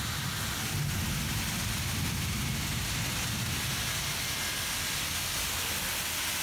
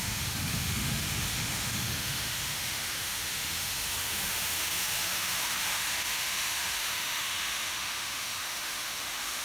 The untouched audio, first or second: first